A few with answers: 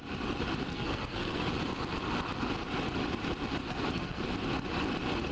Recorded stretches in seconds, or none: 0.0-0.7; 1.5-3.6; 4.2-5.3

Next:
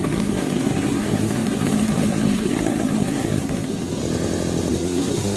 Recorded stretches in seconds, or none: 4.0-4.7

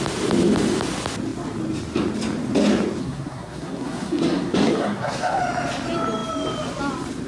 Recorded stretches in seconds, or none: 0.0-3.0; 5.4-7.3

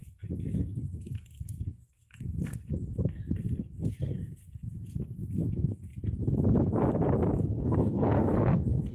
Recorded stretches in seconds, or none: 5.9-7.6